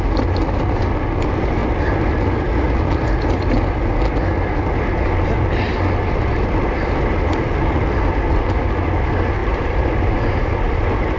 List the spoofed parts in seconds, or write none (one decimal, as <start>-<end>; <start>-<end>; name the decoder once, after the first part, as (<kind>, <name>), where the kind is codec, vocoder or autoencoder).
9.4-10.5 (vocoder, BigVGAN v2)